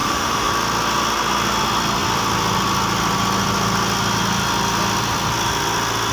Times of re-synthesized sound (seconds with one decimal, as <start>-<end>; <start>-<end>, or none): 0.0-0.5